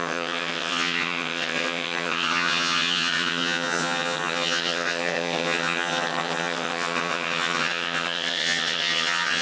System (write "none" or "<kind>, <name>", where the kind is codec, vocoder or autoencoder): vocoder, HiFi-GAN